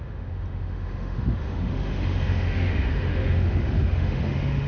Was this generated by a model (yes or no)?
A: yes